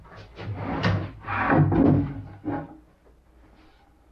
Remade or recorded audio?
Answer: recorded